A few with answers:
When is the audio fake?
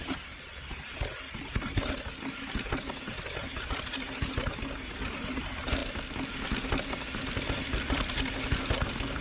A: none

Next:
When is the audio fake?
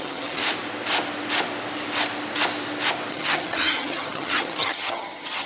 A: 0.0-0.4 (vocoder, HiFi-GAN); 3.1-5.5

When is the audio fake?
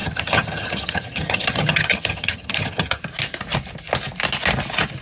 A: 0.0-3.0 (vocoder, HiFi-GAN)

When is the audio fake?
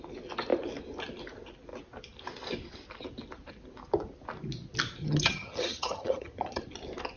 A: 5.0-6.6 (vocoder, HiFi-GAN)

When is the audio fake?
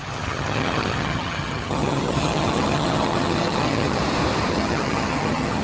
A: 0.0-4.0 (vocoder, HiFi-GAN); 4.5-5.6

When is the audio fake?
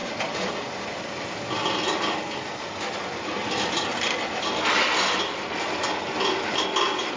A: none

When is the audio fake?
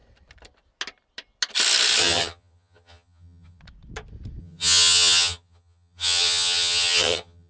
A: 2.0-3.6 (vocoder, HiFi-GAN); 4.4-7.5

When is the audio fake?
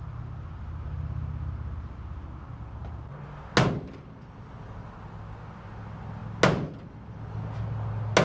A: none